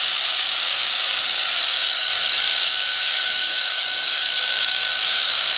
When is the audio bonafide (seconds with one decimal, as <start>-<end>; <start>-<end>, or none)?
none